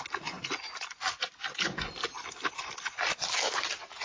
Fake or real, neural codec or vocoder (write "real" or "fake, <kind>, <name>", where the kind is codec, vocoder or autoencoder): real